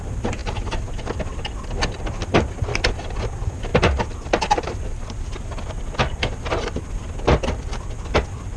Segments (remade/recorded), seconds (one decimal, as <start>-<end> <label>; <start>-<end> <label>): 0.0-8.6 recorded